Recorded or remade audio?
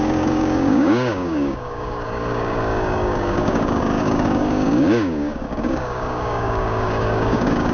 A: remade